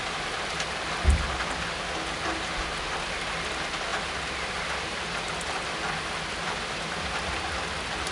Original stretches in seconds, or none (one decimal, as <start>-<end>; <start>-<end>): 0.0-8.1